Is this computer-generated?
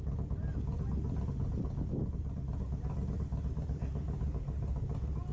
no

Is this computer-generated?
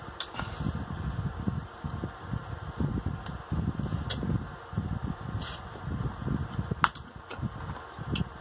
no